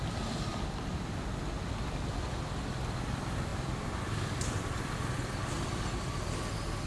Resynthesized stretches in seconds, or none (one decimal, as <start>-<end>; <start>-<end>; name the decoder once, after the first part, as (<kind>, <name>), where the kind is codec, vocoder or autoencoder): 0.5-1.2 (vocoder, BigVGAN v2); 3.5-5.8